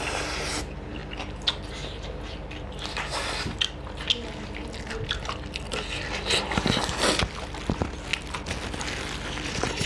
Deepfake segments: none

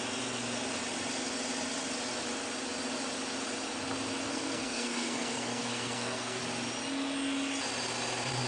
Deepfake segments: 4.3-6.4 (codec, SNAC)

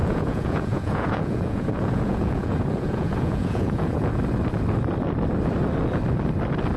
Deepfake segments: 0.0-4.1 (vocoder, Vocos)